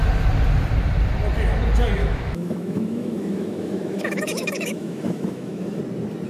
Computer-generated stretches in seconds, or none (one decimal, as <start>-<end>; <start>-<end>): 2.0-5.8